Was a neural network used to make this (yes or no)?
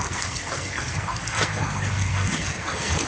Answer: yes